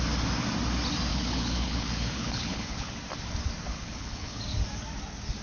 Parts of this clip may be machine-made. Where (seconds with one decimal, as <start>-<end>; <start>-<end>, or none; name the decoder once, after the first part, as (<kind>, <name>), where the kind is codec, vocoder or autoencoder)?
1.1-2.9 (codec, HILCodec); 3.7-4.4